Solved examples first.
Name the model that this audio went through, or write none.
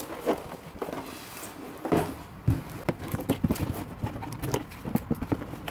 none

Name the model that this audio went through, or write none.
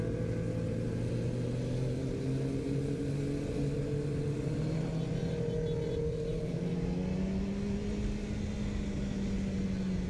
none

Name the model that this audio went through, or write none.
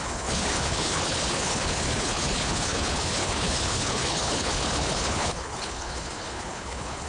codec, HILCodec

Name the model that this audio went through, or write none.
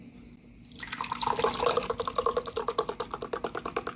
none